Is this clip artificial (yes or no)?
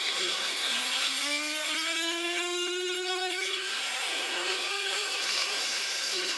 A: yes